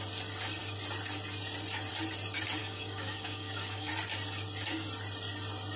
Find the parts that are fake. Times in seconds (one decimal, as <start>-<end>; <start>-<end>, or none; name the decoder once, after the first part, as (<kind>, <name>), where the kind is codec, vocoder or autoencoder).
2.6-3.9 (codec, DAC)